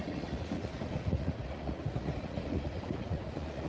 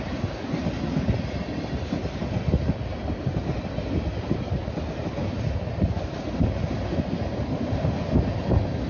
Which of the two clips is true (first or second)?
second